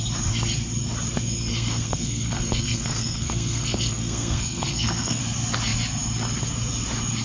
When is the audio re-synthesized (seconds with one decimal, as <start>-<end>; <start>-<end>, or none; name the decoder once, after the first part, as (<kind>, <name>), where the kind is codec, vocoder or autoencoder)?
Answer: 1.5-5.2 (codec, SNAC)